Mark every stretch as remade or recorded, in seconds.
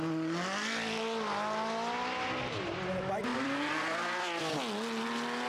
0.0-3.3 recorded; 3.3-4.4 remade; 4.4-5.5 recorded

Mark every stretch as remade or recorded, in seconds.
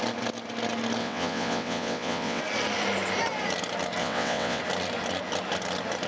0.0-1.0 recorded; 1.0-2.4 remade; 2.4-4.0 recorded; 4.0-4.6 remade; 4.6-6.1 recorded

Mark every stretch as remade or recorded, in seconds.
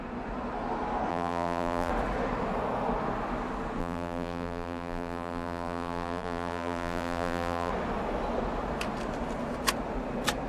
0.0-1.1 recorded; 1.1-1.9 remade; 1.9-3.8 recorded; 3.8-7.7 remade; 7.7-10.5 recorded